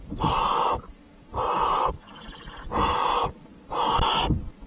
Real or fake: fake